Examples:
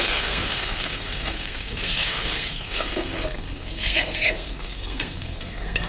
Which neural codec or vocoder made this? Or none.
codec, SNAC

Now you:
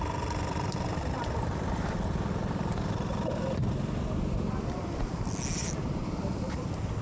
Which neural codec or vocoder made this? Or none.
none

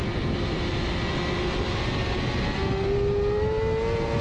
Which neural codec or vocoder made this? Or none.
none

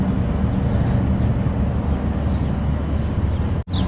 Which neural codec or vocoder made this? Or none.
none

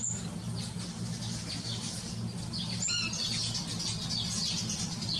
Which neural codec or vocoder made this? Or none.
none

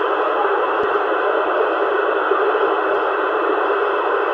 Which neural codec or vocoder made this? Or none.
none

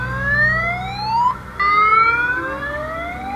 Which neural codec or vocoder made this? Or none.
none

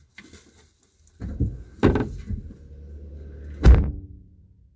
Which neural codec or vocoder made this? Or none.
none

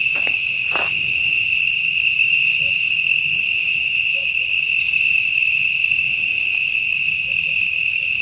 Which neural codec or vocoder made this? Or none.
vocoder, BigVGAN v2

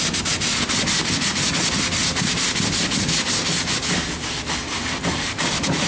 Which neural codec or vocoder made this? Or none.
none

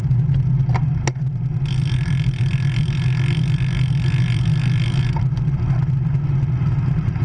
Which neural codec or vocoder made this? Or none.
none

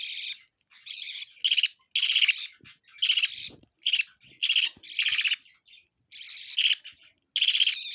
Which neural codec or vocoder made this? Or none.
none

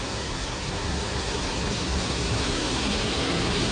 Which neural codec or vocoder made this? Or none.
codec, SNAC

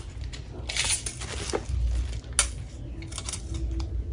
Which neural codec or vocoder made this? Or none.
none